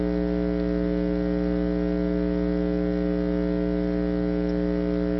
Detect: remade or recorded recorded